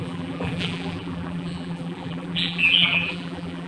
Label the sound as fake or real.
fake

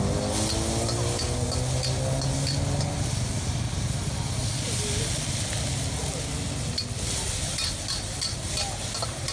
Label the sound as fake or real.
real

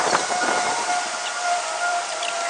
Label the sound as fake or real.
fake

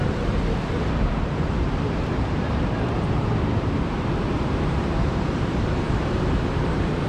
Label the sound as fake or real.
fake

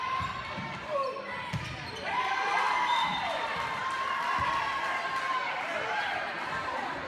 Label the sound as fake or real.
fake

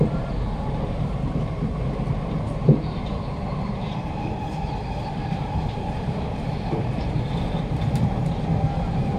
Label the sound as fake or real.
fake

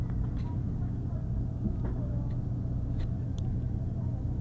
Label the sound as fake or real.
real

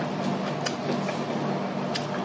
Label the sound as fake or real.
real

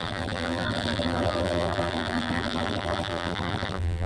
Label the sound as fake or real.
fake